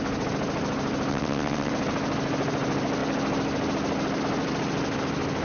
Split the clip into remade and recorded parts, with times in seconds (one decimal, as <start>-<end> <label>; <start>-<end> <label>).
0.0-1.1 recorded; 1.1-1.7 remade; 1.7-5.4 recorded